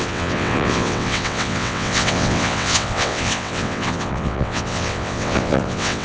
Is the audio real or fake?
fake